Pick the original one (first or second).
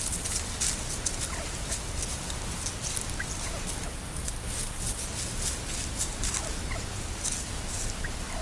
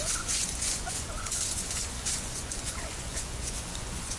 first